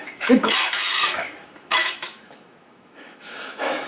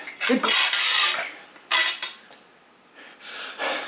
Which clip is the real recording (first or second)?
second